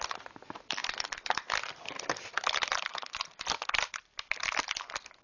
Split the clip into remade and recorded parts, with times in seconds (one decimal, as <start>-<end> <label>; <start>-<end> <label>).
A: 0.0-5.2 recorded